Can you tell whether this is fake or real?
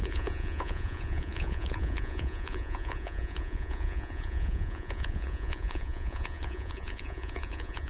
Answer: fake